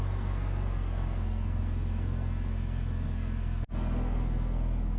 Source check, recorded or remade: remade